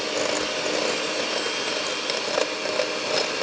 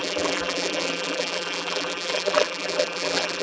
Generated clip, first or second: second